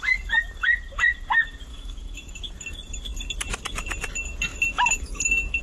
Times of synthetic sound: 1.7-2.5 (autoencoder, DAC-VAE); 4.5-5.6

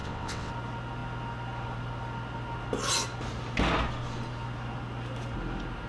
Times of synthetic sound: 0.0-0.5 (vocoder, WaveNeXt)

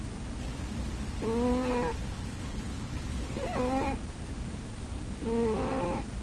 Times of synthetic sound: 1.9-3.3 (codec, HILCodec)